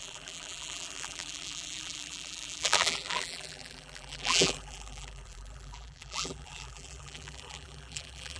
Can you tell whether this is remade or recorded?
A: remade